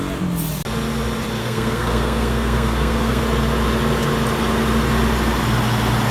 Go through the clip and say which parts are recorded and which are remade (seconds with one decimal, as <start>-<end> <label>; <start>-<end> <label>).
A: 0.0-1.4 recorded; 1.4-3.2 remade; 3.2-6.1 recorded